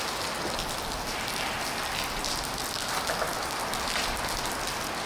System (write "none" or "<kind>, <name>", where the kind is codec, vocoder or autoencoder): none